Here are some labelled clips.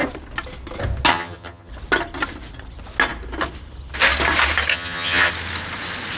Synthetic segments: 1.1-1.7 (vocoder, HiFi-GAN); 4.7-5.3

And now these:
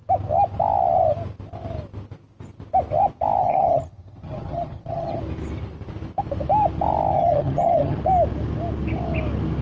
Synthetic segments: 3.4-5.2 (vocoder, HiFi-GAN); 7.1-8.0

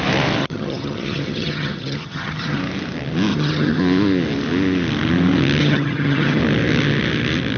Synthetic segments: 0.4-2.6 (vocoder, HiFi-GAN); 3.3-3.8; 5.6-6.4

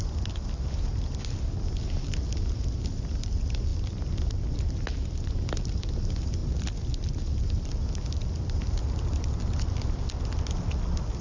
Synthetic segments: none

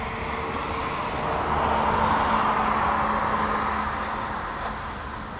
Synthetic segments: none